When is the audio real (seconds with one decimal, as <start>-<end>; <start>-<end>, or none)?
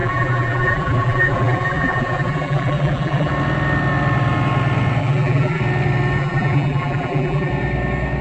3.3-5.0; 5.6-6.2; 7.5-8.2